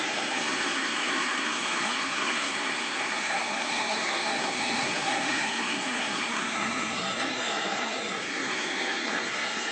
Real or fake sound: fake